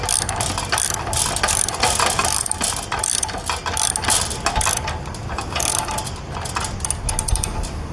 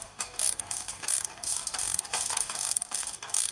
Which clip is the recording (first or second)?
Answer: first